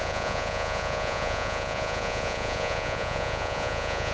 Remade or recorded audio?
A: remade